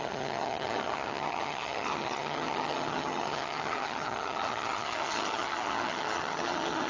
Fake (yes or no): yes